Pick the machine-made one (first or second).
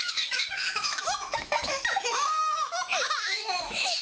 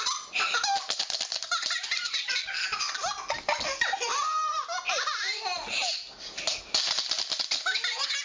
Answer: first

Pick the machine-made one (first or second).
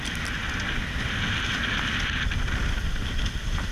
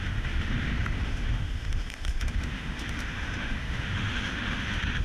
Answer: second